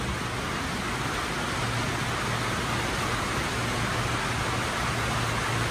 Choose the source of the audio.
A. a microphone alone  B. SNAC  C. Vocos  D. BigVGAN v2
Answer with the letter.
A